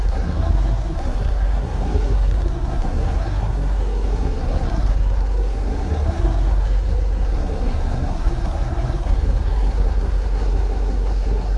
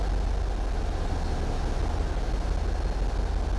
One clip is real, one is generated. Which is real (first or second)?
second